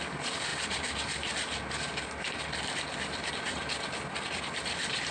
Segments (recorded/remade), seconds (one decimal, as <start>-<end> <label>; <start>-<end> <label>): 0.0-5.1 recorded